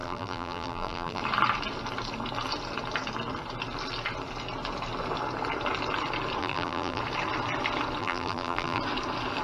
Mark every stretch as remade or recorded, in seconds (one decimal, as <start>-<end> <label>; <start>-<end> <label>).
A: 0.0-1.2 remade; 1.2-6.4 recorded; 6.4-7.0 remade; 7.0-8.0 recorded; 8.0-8.8 remade; 8.8-9.4 recorded